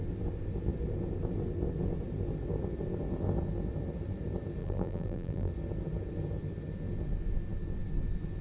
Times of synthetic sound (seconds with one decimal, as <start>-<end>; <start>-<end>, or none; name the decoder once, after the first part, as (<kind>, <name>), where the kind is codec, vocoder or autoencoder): 4.6-5.5 (vocoder, BigVGAN v2)